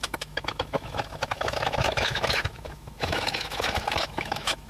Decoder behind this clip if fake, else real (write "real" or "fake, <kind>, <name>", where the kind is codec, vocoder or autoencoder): fake, autoencoder, DAC-VAE